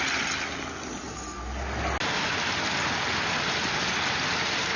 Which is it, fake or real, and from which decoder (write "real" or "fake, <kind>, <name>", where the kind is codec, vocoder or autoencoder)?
real